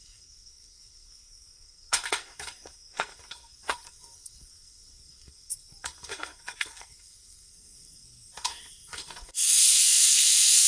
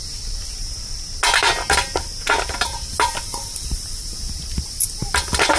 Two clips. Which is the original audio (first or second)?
second